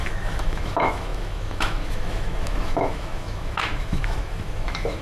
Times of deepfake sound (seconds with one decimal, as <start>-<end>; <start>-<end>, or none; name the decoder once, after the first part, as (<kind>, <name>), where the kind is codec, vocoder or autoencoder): 0.0-5.0 (autoencoder, DAC-VAE)